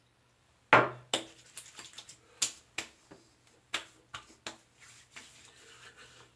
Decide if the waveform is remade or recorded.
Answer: recorded